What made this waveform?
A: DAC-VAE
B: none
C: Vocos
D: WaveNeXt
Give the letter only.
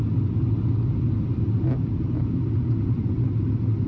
B